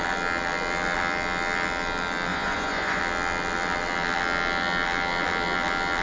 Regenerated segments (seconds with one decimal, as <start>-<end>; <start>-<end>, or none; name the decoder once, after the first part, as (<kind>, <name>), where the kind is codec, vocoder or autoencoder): 2.3-3.0 (vocoder, Vocos)